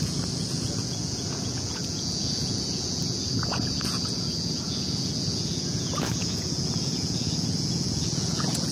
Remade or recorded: remade